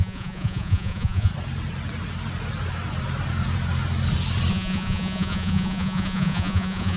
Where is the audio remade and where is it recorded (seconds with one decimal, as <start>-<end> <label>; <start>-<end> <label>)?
0.0-1.3 remade; 1.3-4.5 recorded; 4.5-7.0 remade